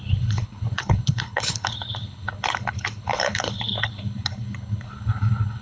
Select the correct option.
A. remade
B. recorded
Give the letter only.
A